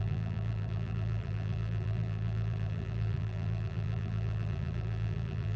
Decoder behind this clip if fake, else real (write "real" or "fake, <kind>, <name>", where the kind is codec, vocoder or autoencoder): fake, vocoder, BigVGAN v2